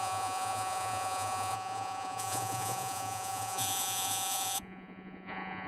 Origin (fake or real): fake